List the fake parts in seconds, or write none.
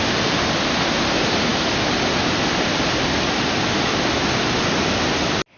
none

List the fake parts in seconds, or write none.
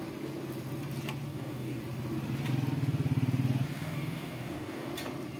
1.3-1.8 (codec, DAC); 3.7-4.9